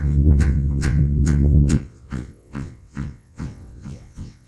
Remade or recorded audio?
remade